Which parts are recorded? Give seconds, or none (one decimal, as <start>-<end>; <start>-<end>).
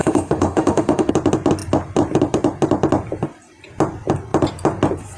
1.1-5.2